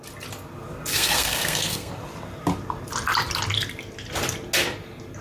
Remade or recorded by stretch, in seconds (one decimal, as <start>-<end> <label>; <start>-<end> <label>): 0.0-0.9 recorded; 0.9-1.9 remade; 1.9-5.2 recorded